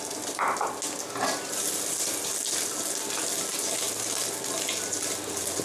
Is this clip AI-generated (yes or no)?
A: no